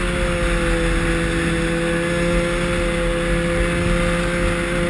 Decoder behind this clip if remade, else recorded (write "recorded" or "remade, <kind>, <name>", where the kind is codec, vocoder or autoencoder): recorded